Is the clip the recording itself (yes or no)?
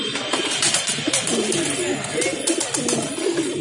yes